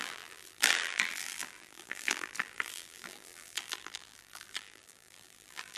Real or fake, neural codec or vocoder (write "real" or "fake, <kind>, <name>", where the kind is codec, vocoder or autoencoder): fake, vocoder, BigVGAN v2